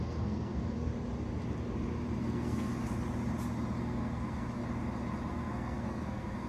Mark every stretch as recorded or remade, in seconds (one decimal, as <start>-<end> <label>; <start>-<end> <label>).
0.0-0.9 remade; 0.9-2.2 recorded; 2.2-2.7 remade; 2.7-3.8 recorded; 3.8-4.6 remade; 4.6-5.3 recorded; 5.3-6.5 remade